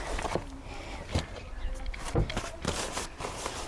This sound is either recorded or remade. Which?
recorded